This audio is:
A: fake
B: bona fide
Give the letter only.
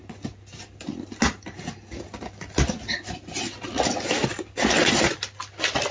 B